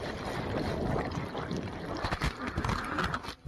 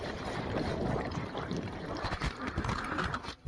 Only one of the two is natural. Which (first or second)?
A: first